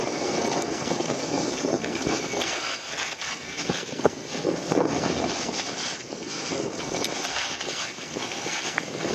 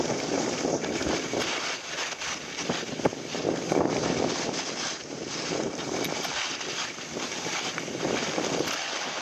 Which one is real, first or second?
second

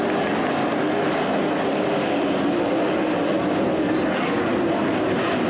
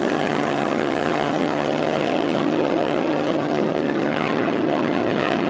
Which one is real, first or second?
first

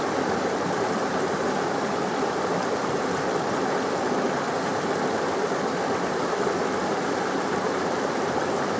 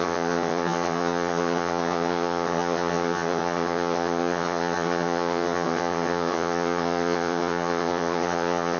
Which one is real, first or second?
first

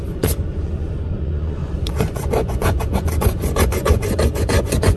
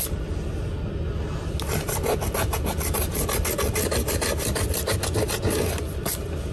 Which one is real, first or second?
second